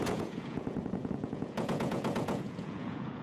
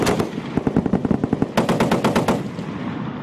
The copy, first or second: first